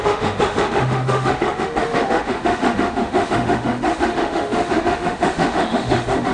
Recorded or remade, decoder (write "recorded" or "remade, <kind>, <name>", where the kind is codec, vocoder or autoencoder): remade, autoencoder, DAC-VAE